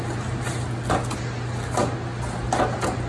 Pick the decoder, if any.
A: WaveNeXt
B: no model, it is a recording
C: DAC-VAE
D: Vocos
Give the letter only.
B